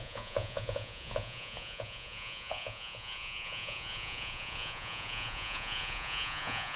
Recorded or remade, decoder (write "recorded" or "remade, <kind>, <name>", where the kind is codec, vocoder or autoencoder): remade, vocoder, Vocos